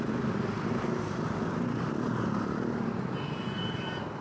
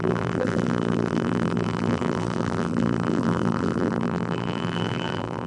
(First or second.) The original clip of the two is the first